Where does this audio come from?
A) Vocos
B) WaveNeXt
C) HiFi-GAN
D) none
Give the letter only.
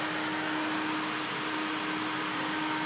D